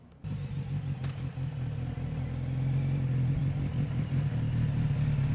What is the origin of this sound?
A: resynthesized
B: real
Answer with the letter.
B